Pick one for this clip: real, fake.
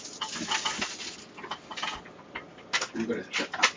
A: real